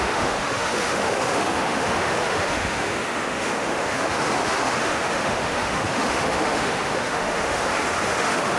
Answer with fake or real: fake